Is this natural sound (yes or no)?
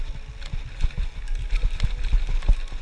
yes